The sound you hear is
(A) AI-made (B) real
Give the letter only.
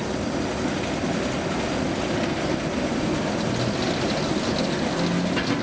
B